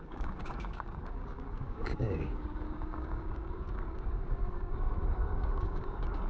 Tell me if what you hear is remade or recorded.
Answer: remade